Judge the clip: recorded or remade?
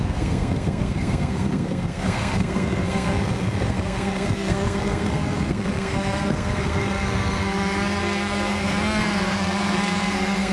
remade